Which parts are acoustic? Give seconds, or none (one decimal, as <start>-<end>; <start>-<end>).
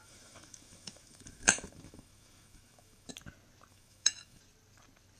3.1-3.7; 4.4-5.2